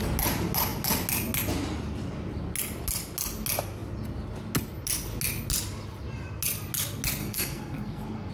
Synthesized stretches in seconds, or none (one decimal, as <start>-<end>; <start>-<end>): 7.2-8.3